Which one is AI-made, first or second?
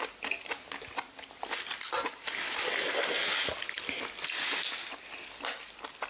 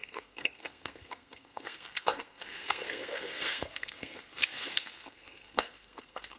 second